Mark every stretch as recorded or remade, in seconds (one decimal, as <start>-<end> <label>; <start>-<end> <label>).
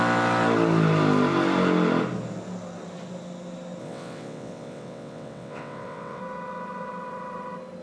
0.0-3.8 recorded; 3.8-6.2 remade; 6.2-7.8 recorded